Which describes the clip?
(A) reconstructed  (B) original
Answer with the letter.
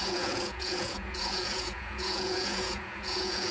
A